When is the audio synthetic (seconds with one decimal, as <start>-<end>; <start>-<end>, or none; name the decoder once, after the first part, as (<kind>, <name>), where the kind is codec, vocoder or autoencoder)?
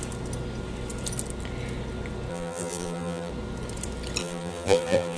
2.3-3.3 (vocoder, BigVGAN v2); 4.2-5.2